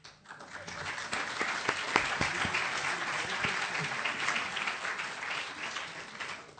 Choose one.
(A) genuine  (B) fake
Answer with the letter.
A